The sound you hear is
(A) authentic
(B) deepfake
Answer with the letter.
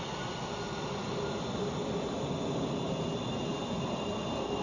A